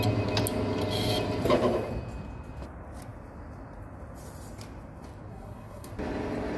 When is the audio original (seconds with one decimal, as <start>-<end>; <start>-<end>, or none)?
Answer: 0.0-5.3; 5.9-6.6